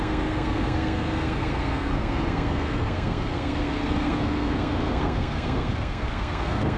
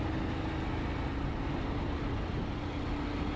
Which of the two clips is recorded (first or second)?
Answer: second